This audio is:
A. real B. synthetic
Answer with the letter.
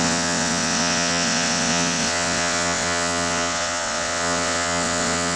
B